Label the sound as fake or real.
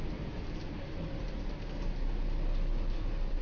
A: real